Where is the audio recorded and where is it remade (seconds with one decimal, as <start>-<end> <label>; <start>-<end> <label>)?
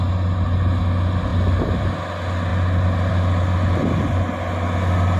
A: 0.0-1.3 recorded; 1.3-2.0 remade; 2.0-5.2 recorded